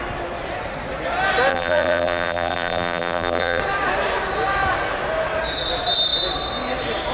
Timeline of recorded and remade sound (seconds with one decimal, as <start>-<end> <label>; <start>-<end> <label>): 0.0-1.5 recorded; 1.5-3.6 remade; 3.6-7.1 recorded